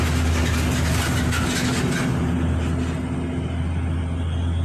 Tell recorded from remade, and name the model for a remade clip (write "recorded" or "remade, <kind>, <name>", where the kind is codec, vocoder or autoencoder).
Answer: recorded